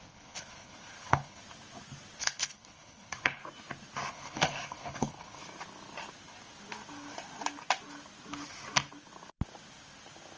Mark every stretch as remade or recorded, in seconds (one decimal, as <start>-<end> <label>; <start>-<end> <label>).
0.0-1.4 remade; 1.4-2.2 recorded; 2.2-3.4 remade; 3.4-4.1 recorded; 4.1-5.4 remade; 5.4-10.4 recorded